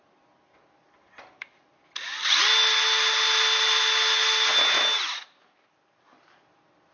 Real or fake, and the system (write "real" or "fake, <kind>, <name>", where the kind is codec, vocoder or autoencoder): real